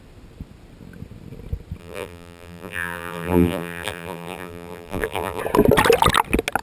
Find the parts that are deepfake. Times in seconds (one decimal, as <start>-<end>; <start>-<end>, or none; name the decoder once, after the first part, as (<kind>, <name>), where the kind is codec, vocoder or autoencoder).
1.8-5.4 (vocoder, BigVGAN v2)